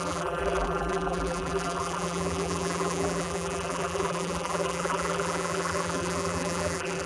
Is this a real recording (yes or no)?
no